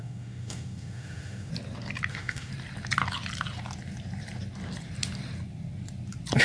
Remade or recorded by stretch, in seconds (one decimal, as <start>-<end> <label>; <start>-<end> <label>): 0.0-1.5 remade; 1.5-2.1 recorded; 2.1-2.5 remade; 2.5-6.4 recorded